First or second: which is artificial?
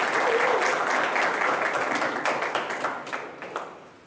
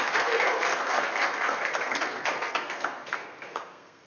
second